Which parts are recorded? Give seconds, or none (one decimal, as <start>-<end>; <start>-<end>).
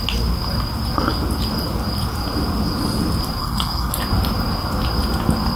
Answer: 0.0-3.4; 3.9-5.6